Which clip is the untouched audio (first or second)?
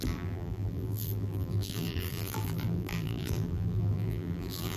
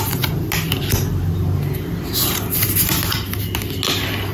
second